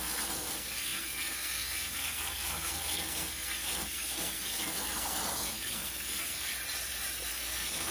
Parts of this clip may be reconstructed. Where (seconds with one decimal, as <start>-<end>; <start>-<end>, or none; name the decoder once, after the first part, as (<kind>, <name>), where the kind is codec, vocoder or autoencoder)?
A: 0.0-6.5 (codec, SNAC); 7.3-7.9